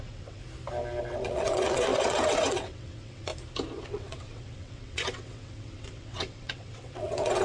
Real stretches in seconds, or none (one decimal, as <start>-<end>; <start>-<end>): 0.4-1.0; 3.3-3.8